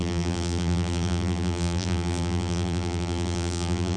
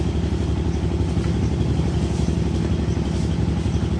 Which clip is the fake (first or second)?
first